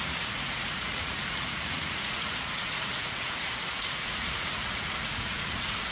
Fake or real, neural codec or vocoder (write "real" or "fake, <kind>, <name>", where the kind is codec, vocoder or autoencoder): fake, vocoder, Vocos